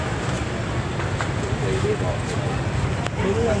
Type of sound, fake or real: real